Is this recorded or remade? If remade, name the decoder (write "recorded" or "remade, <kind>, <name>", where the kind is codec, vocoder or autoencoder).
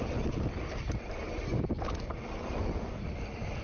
recorded